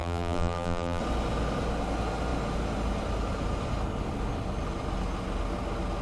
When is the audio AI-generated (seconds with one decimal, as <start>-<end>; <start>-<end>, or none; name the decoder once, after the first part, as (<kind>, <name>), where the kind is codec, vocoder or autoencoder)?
0.0-1.0 (vocoder, BigVGAN v2)